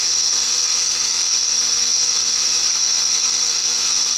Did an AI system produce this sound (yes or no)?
yes